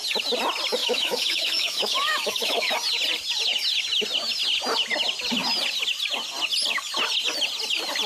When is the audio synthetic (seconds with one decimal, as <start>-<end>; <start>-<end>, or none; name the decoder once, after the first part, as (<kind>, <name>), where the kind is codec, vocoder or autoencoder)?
0.8-2.7 (autoencoder, DAC-VAE)